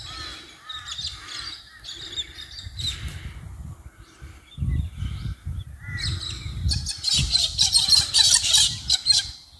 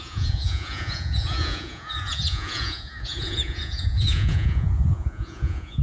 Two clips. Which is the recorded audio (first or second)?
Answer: first